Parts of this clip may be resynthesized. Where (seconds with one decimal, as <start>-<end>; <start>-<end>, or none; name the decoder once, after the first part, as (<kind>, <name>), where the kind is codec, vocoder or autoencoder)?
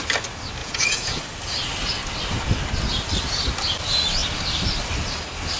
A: 0.6-1.2 (vocoder, Vocos)